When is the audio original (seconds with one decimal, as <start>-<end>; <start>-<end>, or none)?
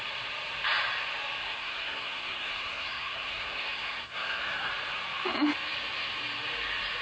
0.0-1.4; 4.7-7.0